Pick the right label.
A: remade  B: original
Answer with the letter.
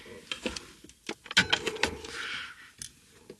B